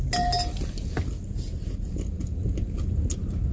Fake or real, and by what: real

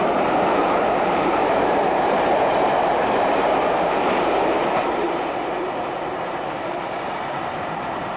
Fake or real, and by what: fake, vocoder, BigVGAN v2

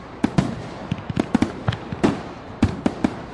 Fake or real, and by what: fake, vocoder, BigVGAN v2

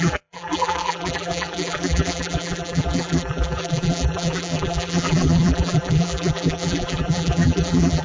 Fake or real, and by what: fake, vocoder, BigVGAN v2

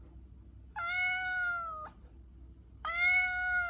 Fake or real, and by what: real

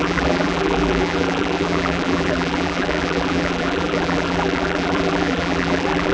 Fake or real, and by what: fake, vocoder, BigVGAN v2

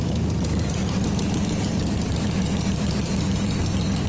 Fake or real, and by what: fake, vocoder, BigVGAN v2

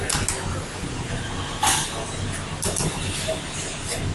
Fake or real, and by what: real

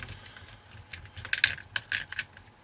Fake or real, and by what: real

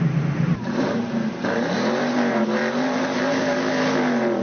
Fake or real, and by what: fake, vocoder, BigVGAN v2